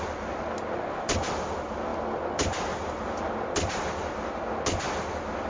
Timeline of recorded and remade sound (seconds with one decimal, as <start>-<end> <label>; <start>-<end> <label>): 0.0-5.5 recorded

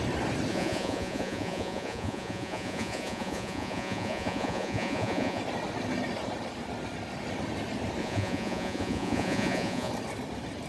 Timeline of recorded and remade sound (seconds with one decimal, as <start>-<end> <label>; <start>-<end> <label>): 0.0-0.5 recorded; 0.5-5.4 remade; 5.4-8.0 recorded; 8.0-9.9 remade; 9.9-10.7 recorded

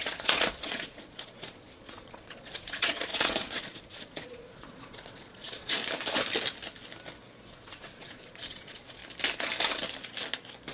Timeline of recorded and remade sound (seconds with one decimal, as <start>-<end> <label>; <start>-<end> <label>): 0.0-5.8 remade; 5.8-7.5 recorded; 7.5-9.0 remade; 9.0-10.7 recorded

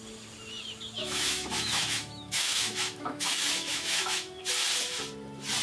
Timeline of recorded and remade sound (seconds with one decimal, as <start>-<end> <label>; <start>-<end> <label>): 0.0-1.0 recorded; 1.0-4.4 remade; 4.4-5.6 recorded

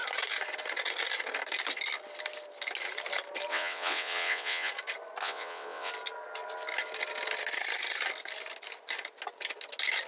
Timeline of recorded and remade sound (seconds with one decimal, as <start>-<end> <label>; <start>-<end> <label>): 0.0-3.5 recorded; 3.5-4.7 remade; 4.7-5.2 recorded; 5.2-5.9 remade; 5.9-10.1 recorded